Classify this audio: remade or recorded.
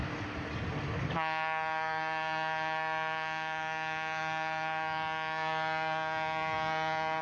recorded